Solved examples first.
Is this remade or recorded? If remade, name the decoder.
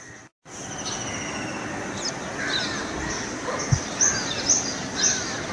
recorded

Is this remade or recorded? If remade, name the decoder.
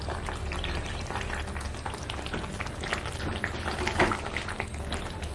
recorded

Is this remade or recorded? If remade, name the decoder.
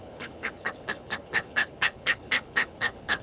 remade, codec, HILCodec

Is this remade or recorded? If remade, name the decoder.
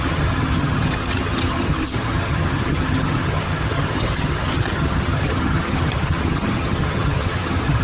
remade, vocoder, HiFi-GAN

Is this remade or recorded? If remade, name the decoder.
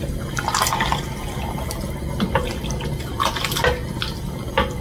recorded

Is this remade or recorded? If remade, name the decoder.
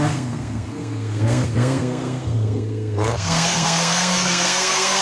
remade, codec, SNAC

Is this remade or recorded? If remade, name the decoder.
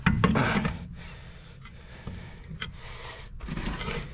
recorded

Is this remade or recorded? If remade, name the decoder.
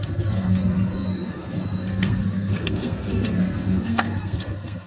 remade, codec, SNAC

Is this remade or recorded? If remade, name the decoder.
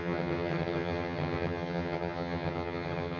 remade, vocoder, HiFi-GAN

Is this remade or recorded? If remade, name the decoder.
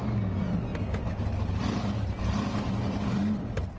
recorded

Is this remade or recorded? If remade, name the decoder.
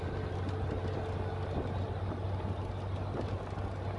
recorded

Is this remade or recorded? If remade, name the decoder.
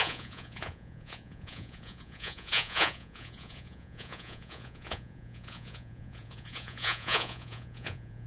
remade, vocoder, Vocos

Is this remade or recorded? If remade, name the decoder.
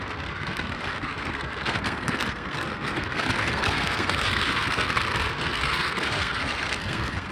remade, codec, SNAC